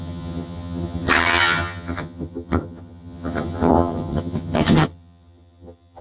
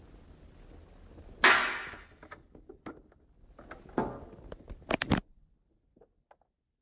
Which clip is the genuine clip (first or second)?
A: second